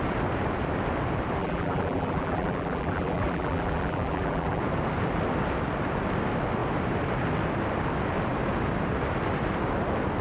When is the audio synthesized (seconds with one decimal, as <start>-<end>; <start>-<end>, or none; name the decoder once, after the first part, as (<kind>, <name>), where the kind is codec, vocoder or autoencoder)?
1.4-4.6 (vocoder, BigVGAN v2)